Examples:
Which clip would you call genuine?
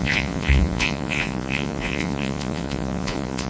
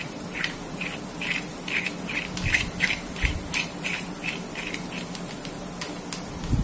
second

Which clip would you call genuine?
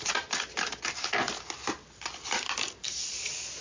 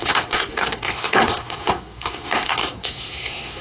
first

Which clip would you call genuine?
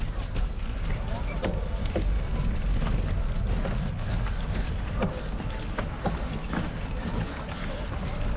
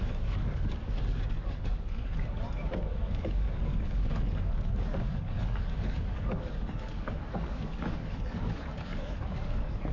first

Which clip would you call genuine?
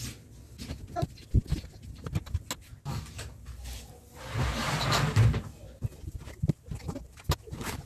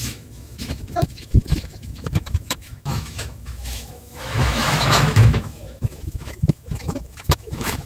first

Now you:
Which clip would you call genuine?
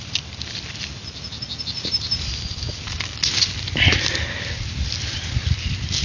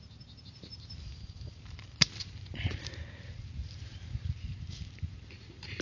first